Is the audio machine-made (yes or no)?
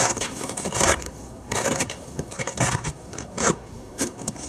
yes